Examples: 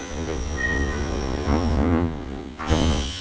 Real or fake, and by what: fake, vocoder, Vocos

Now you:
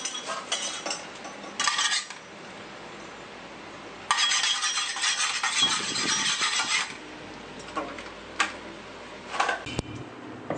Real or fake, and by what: real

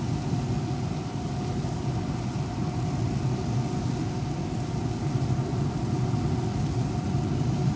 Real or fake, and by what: real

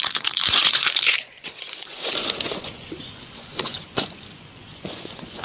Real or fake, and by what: fake, vocoder, Vocos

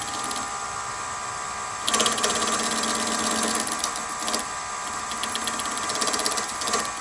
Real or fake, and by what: real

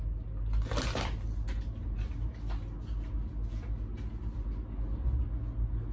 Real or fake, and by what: real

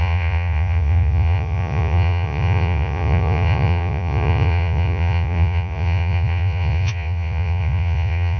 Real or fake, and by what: fake, vocoder, Vocos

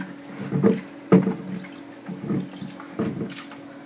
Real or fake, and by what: real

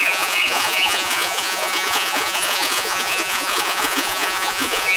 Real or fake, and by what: fake, vocoder, Vocos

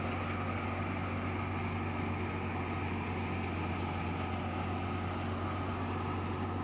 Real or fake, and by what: real